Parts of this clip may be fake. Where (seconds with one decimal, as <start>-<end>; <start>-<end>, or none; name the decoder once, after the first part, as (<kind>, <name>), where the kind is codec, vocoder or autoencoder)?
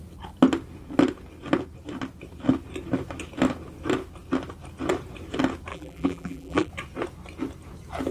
5.7-6.7 (vocoder, BigVGAN v2)